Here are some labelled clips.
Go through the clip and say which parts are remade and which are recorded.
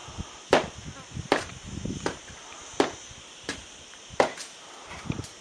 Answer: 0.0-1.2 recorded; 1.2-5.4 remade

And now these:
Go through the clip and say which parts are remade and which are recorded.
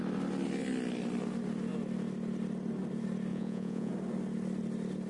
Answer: 0.0-3.3 recorded; 3.3-3.9 remade; 3.9-5.1 recorded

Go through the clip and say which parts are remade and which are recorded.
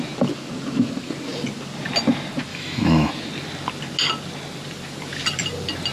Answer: 0.0-2.5 recorded; 2.5-3.1 remade; 3.1-5.9 recorded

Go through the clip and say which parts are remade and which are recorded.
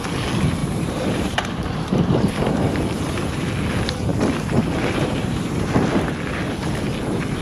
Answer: 0.0-0.6 recorded; 0.6-2.7 remade; 2.7-5.2 recorded; 5.2-5.7 remade; 5.7-7.4 recorded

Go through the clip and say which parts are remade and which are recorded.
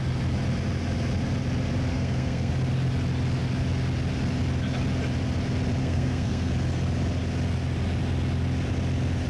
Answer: 0.0-1.9 recorded; 1.9-2.5 remade; 2.5-5.8 recorded; 5.8-6.5 remade; 6.5-9.3 recorded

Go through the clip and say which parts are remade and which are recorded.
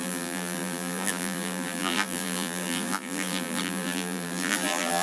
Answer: 0.0-5.0 remade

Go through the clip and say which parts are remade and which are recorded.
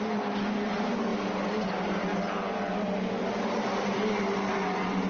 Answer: 0.0-5.1 recorded